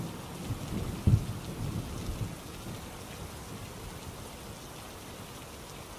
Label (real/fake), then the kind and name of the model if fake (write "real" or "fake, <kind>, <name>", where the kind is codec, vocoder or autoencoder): real